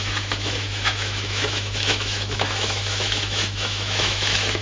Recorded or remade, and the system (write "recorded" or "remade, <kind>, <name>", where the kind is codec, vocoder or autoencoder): remade, autoencoder, DAC-VAE